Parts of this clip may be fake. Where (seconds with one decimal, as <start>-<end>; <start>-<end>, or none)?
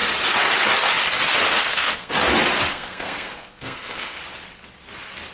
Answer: 1.5-2.1; 2.7-4.2